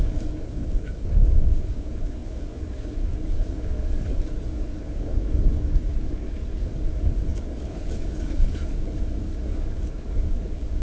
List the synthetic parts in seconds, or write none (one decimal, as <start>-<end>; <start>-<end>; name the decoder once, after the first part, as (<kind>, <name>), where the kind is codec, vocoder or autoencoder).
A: 0.0-10.8 (codec, DAC)

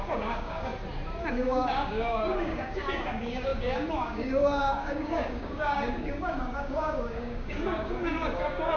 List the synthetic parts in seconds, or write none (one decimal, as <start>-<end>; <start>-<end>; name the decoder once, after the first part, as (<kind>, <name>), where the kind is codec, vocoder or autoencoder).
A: 0.0-0.7 (codec, DAC); 1.2-8.8

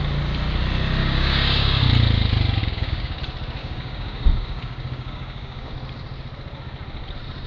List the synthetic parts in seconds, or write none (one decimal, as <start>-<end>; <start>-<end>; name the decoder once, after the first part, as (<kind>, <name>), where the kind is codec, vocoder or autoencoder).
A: 1.0-1.9 (codec, DAC); 2.6-3.2; 3.6-5.7